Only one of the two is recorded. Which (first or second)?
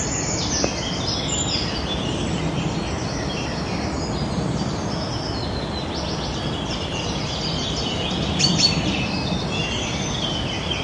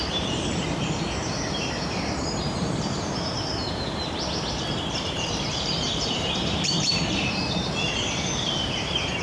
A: first